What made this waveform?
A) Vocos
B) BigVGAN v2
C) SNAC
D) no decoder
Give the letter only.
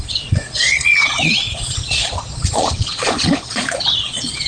A